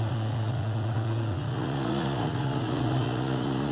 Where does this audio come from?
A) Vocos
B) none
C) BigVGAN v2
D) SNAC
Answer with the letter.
A